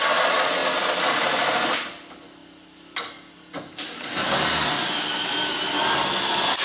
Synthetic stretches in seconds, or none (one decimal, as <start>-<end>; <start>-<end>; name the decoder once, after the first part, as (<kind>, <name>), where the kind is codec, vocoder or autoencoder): none